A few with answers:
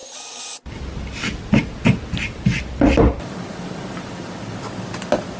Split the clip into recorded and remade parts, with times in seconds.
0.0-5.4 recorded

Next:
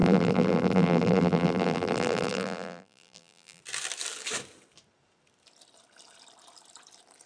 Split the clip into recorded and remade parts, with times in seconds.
0.0-3.6 remade; 3.6-7.3 recorded